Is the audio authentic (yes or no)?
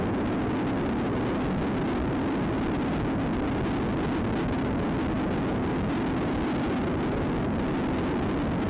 yes